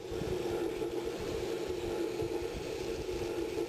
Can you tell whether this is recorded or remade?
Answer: recorded